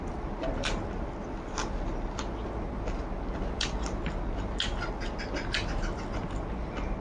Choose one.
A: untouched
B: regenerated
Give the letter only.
A